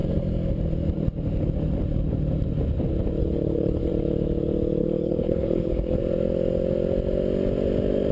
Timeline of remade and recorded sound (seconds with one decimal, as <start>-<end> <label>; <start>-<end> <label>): 0.0-3.2 recorded; 3.2-3.9 remade; 3.9-4.8 recorded; 4.8-6.0 remade; 6.0-8.1 recorded